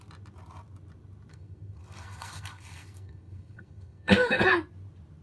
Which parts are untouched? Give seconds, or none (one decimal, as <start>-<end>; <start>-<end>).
0.0-1.3; 4.4-5.2